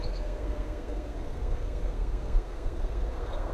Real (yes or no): no